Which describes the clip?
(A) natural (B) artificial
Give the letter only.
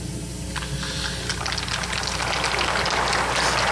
A